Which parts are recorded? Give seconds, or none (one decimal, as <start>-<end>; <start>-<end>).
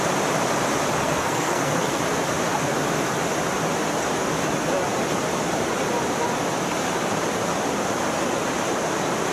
0.0-1.0; 2.0-9.3